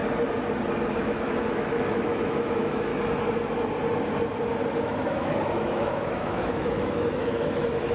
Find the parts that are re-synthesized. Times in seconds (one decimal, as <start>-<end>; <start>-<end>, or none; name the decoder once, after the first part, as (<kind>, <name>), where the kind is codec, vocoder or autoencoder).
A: 1.0-2.9 (autoencoder, DAC-VAE); 4.8-7.9